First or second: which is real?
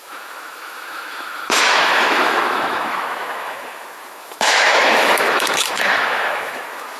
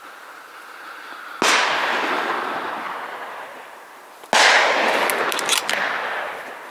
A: second